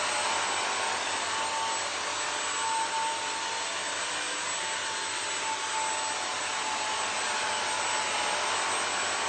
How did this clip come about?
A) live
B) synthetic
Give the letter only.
A